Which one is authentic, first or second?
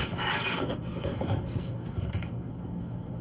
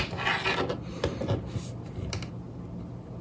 second